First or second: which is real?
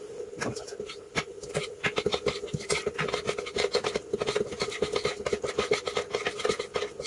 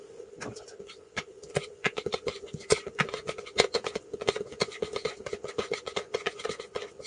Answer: first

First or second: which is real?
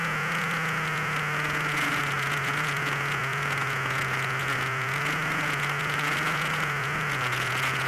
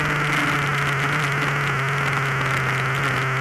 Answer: second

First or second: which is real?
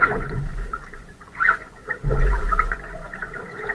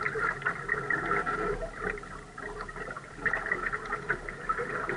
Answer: second